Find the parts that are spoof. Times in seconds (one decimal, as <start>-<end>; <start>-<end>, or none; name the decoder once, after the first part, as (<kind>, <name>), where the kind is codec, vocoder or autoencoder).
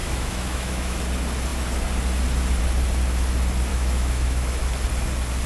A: 0.0-1.0 (autoencoder, DAC-VAE); 3.7-4.6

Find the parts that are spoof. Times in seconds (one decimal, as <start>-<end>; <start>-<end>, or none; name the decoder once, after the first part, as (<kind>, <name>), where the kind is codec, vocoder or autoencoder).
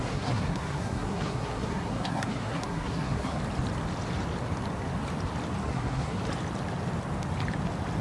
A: 0.0-3.4 (codec, SNAC); 5.6-6.2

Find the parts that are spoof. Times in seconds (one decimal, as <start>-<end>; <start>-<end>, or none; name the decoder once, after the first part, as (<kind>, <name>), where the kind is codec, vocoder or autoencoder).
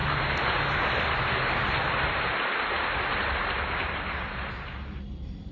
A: none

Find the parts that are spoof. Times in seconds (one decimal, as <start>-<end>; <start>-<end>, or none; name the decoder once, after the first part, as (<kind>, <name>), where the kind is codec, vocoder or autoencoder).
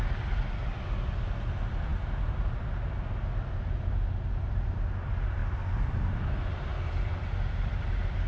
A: none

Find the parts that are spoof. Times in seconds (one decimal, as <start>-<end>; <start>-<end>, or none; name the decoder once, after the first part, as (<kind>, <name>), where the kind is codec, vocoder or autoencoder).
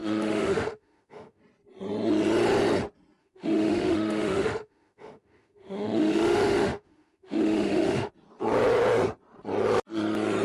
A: 0.0-1.4 (autoencoder, DAC-VAE); 3.2-8.1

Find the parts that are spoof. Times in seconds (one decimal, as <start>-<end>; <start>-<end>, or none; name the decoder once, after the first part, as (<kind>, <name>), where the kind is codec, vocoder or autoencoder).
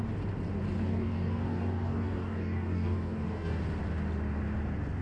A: 0.8-3.6 (codec, DAC)